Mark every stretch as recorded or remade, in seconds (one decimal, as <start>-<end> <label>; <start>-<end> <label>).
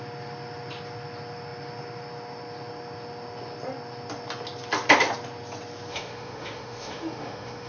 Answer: 0.0-5.9 recorded; 5.9-7.7 remade